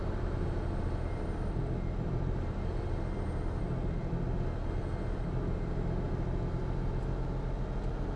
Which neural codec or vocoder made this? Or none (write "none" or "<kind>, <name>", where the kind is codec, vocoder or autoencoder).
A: none